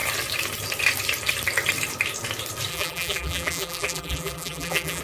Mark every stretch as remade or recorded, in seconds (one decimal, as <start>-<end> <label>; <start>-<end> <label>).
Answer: 0.0-2.7 recorded; 2.7-5.0 remade